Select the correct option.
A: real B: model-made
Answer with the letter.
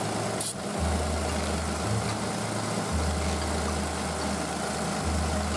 A